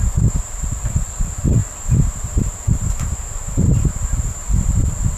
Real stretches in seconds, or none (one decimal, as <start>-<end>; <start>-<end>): 0.0-1.6; 4.7-5.2